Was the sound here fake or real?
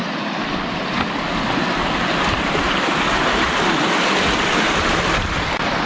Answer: real